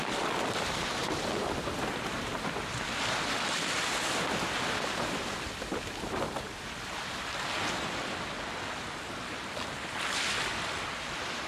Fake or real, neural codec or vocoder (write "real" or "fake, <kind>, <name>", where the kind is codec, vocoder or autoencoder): real